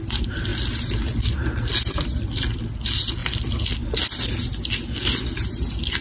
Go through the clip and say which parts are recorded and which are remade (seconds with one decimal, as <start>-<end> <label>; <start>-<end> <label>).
0.0-6.0 recorded